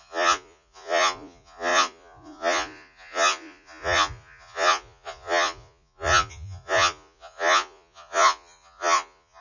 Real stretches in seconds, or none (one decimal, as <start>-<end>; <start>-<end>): none